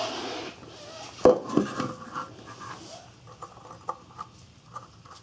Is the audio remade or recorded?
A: recorded